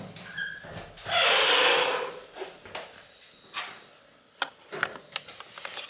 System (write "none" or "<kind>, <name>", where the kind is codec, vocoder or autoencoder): none